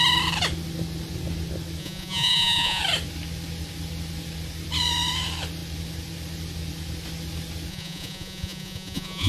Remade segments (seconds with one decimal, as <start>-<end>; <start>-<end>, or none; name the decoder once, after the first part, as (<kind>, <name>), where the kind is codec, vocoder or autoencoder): 1.8-2.8 (vocoder, Vocos); 7.7-9.3